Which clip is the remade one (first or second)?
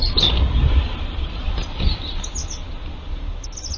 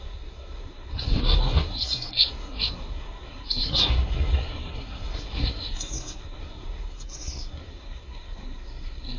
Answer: second